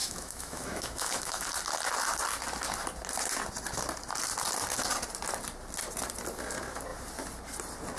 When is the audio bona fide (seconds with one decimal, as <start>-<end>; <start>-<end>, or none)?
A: 1.5-8.0